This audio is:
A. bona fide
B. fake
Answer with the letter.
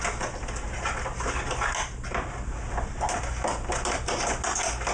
A